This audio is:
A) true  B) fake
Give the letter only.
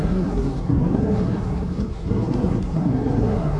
B